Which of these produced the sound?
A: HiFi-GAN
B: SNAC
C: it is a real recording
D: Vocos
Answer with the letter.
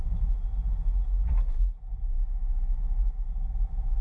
C